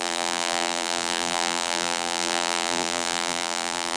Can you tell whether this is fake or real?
fake